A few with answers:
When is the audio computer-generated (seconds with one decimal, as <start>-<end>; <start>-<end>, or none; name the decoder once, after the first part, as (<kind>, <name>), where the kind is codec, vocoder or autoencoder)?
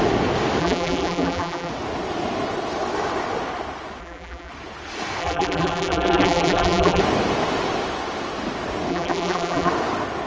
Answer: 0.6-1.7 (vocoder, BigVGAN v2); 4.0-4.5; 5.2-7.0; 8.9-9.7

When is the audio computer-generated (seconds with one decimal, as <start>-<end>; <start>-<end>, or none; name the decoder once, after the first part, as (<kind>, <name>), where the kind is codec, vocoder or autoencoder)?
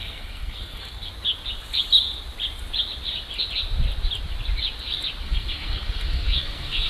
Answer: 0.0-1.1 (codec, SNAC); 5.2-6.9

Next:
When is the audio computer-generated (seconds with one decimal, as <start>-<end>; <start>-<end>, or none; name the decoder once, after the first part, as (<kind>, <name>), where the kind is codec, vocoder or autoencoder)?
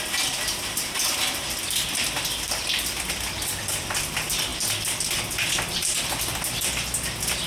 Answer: 0.0-4.5 (vocoder, BigVGAN v2); 5.3-7.5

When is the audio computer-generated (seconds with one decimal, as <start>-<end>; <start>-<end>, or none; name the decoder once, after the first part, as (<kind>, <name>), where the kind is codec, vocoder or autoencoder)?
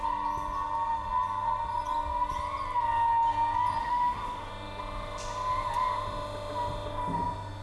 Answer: 3.8-4.5 (autoencoder, DAC-VAE)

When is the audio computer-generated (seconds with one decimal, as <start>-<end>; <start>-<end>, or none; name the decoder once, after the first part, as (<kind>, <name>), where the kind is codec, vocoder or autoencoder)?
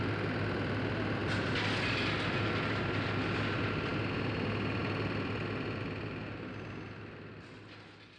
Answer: none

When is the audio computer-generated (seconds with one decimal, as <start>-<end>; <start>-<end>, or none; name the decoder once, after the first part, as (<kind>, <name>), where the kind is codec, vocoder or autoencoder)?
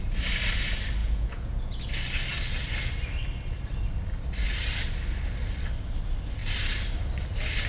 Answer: 1.0-1.8 (vocoder, Vocos)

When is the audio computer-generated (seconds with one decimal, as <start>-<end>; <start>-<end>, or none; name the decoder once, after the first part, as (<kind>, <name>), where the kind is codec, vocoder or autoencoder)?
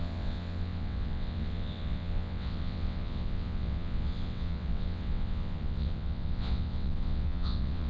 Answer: 0.0-7.9 (vocoder, WaveNeXt)